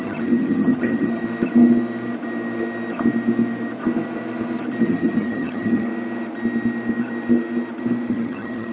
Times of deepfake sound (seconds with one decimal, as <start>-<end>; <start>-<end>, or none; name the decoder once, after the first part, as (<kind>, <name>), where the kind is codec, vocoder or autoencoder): 0.0-1.2 (vocoder, HiFi-GAN); 4.8-5.9; 8.1-8.7